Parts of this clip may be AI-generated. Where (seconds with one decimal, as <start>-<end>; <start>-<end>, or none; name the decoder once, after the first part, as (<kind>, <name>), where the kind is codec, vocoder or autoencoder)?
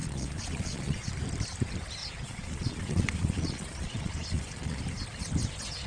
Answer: 0.0-1.1 (vocoder, Vocos); 2.0-4.8